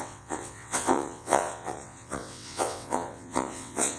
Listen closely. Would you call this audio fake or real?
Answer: fake